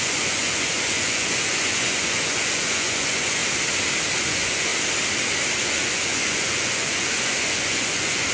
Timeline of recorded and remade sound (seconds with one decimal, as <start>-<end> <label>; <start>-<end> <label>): 0.0-3.4 remade; 3.4-4.2 recorded; 4.2-4.7 remade; 4.7-5.6 recorded; 5.6-8.3 remade

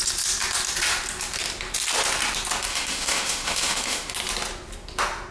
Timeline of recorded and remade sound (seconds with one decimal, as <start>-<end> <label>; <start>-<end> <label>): 0.0-2.7 recorded; 2.7-4.1 remade; 4.1-5.3 recorded